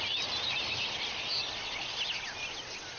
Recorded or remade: recorded